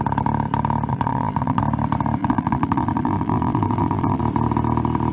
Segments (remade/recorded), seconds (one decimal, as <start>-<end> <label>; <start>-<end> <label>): 0.0-0.9 recorded; 0.9-1.6 remade; 1.6-2.2 recorded; 2.2-4.2 remade; 4.2-5.1 recorded